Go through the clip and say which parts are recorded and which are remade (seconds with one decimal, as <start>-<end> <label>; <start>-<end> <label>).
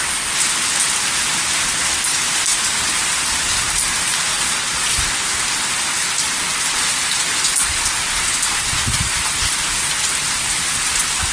0.0-4.3 recorded; 4.3-5.0 remade; 5.0-11.3 recorded